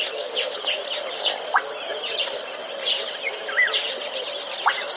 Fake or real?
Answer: real